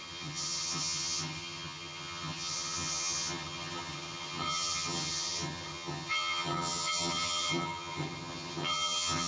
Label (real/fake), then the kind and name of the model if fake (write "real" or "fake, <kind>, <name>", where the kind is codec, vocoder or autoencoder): fake, vocoder, HiFi-GAN